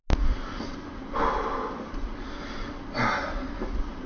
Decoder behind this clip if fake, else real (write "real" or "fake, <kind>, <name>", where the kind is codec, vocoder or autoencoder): real